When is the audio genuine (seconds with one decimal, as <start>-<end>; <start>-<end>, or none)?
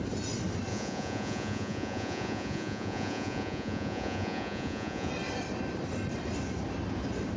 0.0-0.7; 5.1-7.4